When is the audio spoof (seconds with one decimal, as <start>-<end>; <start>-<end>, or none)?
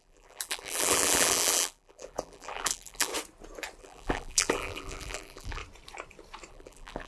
0.0-3.1; 3.8-5.6; 6.5-7.1